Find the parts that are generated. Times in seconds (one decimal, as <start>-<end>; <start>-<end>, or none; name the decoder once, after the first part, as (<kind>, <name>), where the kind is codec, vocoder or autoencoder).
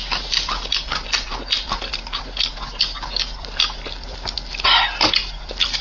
none